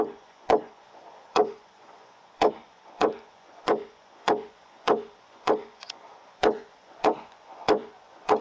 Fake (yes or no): yes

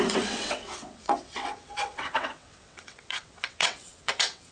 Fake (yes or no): yes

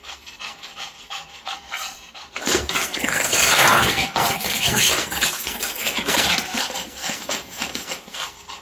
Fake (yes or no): yes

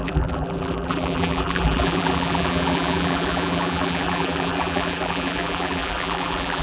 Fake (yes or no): yes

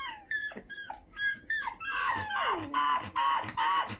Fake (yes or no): yes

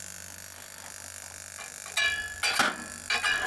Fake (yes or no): no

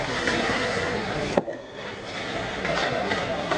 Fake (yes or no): yes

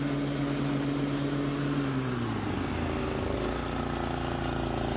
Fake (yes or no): no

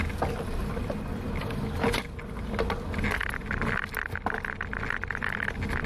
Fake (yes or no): no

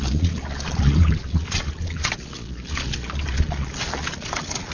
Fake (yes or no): yes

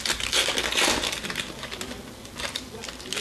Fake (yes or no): no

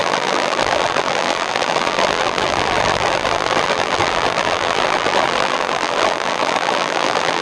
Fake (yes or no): yes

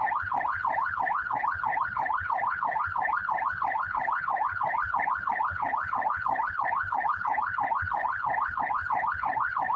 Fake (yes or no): yes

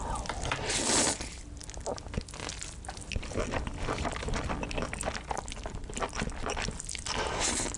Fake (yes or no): no